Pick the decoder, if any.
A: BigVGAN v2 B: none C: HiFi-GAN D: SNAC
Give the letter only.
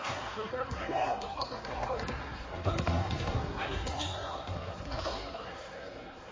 D